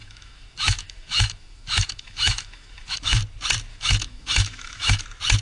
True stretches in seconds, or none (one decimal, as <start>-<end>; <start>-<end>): 3.2-3.7; 5.0-5.4